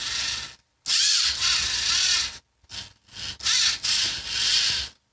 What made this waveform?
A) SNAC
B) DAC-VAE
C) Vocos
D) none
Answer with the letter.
D